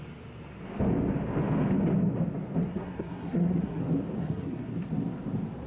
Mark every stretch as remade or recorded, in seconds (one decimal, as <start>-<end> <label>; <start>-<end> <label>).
0.0-2.7 recorded; 2.7-3.8 remade; 3.8-4.2 recorded; 4.2-4.7 remade; 4.7-5.7 recorded